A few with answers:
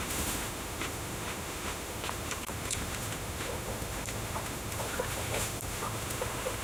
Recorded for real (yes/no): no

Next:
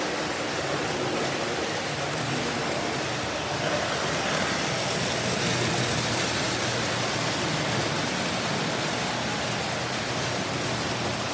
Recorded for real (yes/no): yes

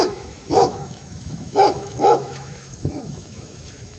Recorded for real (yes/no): no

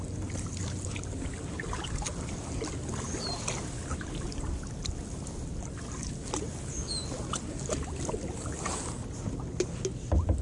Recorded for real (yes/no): yes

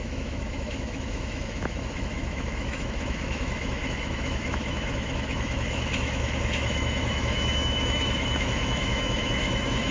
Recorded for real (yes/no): no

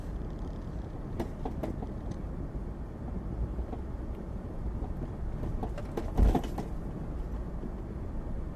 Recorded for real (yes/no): yes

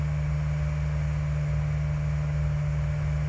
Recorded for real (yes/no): yes